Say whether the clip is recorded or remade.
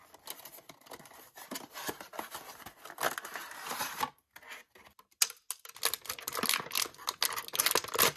recorded